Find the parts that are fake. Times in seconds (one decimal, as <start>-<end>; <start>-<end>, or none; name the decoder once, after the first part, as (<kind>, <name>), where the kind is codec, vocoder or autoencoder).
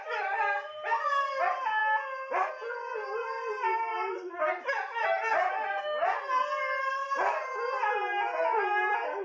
none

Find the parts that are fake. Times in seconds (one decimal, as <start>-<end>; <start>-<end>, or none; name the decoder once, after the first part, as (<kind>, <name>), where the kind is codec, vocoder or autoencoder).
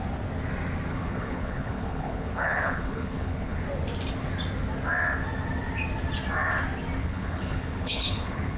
0.9-3.6 (codec, HILCodec); 7.0-8.6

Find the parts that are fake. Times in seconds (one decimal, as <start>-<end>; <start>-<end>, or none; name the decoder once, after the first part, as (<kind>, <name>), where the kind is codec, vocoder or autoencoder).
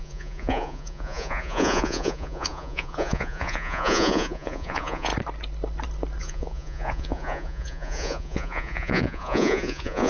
0.0-5.1 (vocoder, Vocos); 6.2-10.1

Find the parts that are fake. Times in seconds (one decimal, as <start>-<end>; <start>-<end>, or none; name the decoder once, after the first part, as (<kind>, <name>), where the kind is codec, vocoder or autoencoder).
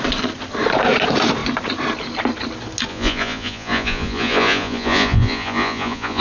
2.9-6.2 (vocoder, Vocos)